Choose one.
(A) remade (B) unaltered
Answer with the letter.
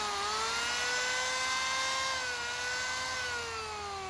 B